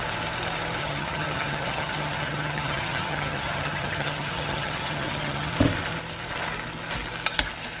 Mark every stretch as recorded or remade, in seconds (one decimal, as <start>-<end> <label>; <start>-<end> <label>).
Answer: 0.0-0.8 recorded; 0.8-5.5 remade; 5.5-7.8 recorded